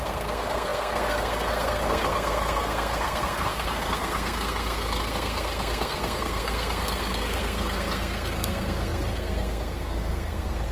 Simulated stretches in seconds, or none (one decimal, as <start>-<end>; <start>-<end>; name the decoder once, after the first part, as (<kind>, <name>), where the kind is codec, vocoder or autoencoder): 0.0-10.7 (codec, SNAC)